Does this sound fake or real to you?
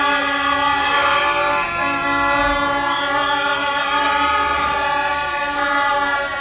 real